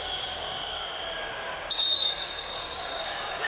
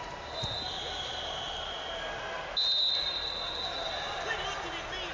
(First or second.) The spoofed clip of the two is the first